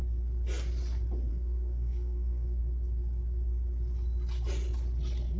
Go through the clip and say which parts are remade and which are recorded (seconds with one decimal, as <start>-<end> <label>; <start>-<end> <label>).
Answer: 0.0-1.3 recorded; 1.3-2.6 remade; 2.6-5.4 recorded